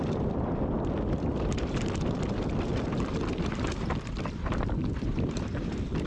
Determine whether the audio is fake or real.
fake